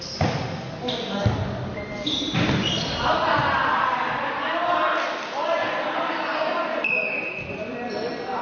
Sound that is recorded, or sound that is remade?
recorded